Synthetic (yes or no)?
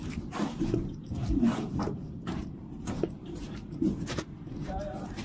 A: yes